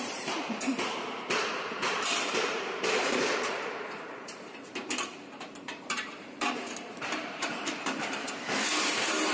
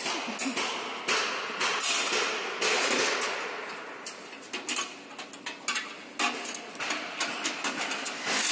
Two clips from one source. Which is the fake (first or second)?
first